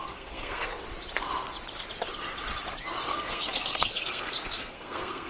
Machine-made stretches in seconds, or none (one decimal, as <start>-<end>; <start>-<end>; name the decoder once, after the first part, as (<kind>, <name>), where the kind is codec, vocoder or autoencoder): 0.0-0.7 (codec, SNAC); 3.1-5.3